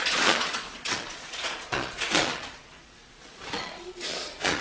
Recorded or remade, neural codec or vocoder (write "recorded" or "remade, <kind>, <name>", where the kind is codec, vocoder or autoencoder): remade, vocoder, Vocos